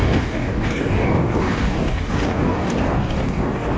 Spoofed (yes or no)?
yes